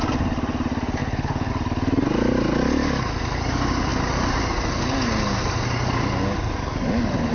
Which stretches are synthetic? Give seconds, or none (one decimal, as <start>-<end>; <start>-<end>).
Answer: 1.0-1.5